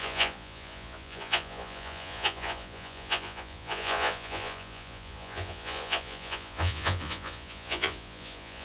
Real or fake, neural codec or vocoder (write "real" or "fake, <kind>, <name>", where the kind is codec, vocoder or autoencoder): fake, vocoder, Vocos